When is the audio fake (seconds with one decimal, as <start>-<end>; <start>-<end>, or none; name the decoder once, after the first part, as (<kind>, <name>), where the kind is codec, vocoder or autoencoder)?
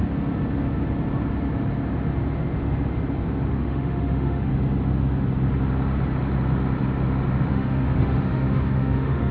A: 3.5-4.5 (autoencoder, DAC-VAE); 7.5-9.3